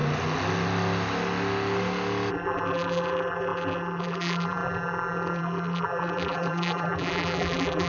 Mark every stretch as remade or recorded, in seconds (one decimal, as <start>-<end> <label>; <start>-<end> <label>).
0.0-2.3 recorded; 2.3-7.9 remade